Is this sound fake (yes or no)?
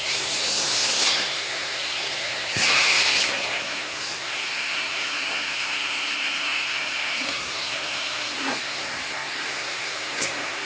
yes